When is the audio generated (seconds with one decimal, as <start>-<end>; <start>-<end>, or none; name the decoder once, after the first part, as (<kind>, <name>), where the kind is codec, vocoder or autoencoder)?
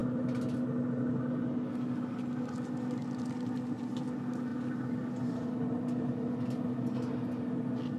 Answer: none